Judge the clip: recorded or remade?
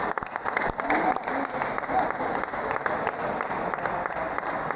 recorded